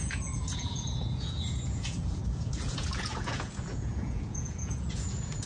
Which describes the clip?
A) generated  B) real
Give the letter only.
A